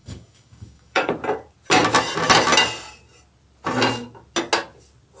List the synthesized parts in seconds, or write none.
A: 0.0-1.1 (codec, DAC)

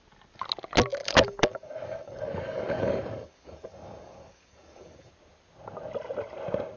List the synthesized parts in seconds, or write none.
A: 1.0-5.1 (codec, DAC)

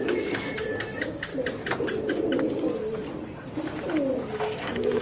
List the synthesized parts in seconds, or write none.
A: 0.0-1.3 (codec, DAC); 4.3-5.0

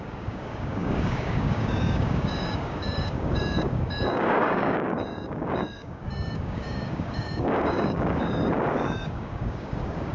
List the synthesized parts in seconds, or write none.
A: 0.0-10.1 (codec, DAC)

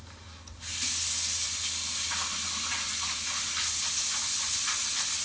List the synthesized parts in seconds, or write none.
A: none

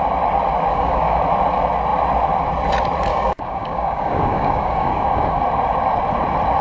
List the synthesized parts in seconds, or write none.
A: 0.7-1.2 (codec, DAC); 3.1-5.4